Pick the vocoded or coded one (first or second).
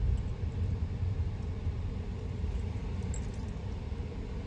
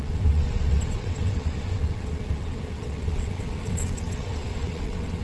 second